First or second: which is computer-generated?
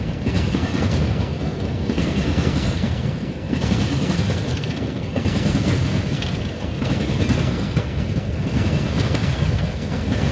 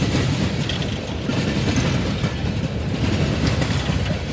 first